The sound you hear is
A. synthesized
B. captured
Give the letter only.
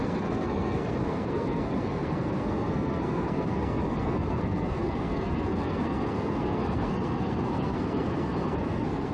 A